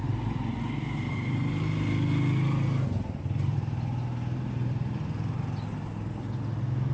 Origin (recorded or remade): recorded